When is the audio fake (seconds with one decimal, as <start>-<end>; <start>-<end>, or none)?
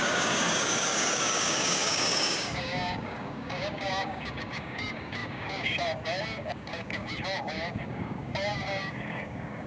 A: 0.0-9.7